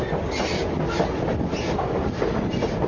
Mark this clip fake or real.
real